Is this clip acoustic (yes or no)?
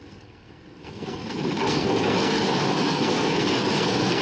no